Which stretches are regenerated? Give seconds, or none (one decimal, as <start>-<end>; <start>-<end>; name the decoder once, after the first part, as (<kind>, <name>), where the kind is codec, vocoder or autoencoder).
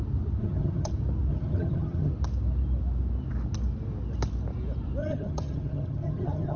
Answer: 0.4-0.9 (vocoder, HiFi-GAN); 1.3-2.1; 5.0-6.6